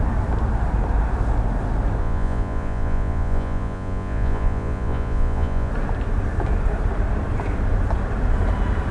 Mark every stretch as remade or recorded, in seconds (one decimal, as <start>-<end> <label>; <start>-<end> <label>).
0.0-2.0 recorded; 2.0-5.7 remade; 5.7-8.9 recorded